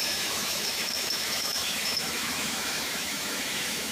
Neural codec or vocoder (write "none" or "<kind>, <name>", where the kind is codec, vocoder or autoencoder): autoencoder, DAC-VAE